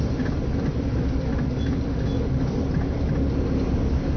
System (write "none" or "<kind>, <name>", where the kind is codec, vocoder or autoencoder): none